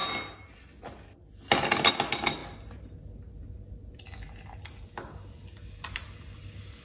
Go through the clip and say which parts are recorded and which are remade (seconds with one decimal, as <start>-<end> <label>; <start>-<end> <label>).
0.0-6.8 recorded